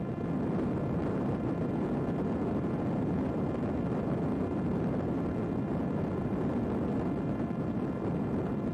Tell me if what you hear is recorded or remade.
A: recorded